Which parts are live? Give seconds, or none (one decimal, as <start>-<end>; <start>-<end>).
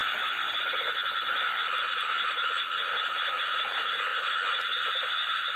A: 3.4-5.6